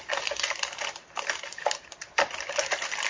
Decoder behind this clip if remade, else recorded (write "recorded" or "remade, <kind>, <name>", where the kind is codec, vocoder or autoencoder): remade, vocoder, BigVGAN v2